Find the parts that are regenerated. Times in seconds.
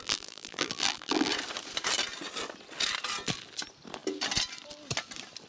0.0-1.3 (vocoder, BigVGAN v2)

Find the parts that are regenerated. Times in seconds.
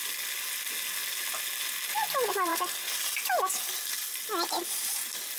none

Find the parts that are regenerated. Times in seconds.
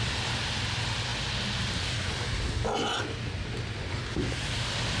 none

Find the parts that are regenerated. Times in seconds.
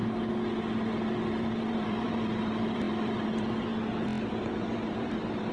1.1-3.7 (vocoder, BigVGAN v2); 4.3-5.5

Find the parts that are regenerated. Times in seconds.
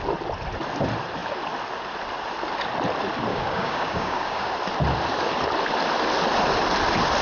3.3-4.5 (codec, DAC)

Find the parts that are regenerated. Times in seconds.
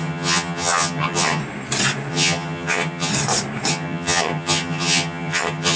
0.0-1.4 (vocoder, HiFi-GAN); 2.1-3.1; 3.7-5.8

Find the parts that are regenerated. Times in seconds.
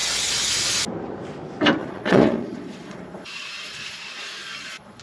1.8-5.0 (vocoder, Vocos)